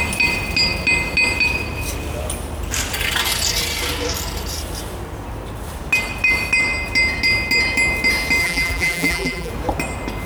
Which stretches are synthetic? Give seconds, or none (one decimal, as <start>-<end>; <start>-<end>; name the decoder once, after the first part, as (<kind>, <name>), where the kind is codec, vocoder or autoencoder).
8.4-9.5 (vocoder, BigVGAN v2)